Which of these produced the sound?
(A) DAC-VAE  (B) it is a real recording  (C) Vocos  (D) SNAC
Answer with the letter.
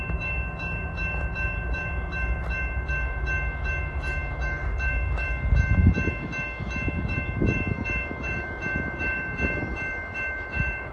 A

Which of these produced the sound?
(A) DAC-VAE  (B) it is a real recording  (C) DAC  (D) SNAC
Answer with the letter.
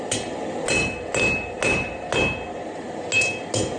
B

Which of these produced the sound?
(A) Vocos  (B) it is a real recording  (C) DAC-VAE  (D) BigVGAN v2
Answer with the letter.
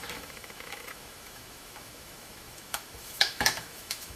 C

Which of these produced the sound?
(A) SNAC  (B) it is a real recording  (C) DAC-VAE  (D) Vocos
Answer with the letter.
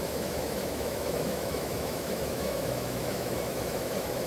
C